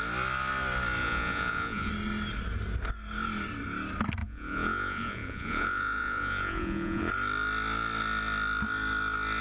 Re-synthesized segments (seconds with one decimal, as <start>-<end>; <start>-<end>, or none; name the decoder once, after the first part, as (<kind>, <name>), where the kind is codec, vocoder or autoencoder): 1.0-1.9 (vocoder, Vocos); 4.2-7.1